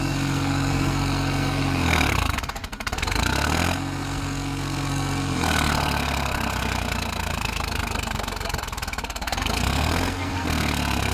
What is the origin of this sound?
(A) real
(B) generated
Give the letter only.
B